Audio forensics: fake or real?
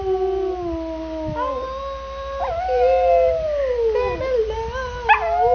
real